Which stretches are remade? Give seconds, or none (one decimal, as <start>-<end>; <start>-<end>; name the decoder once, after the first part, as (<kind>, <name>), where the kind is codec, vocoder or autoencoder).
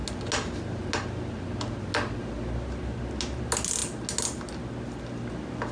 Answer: none